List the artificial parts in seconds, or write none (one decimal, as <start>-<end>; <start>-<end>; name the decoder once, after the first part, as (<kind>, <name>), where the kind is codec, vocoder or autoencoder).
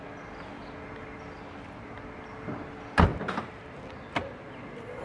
none